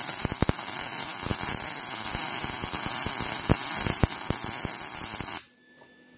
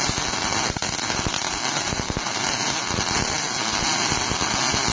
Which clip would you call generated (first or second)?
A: first